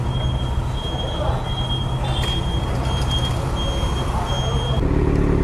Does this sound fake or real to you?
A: real